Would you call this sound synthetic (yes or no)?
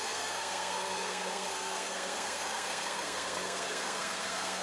yes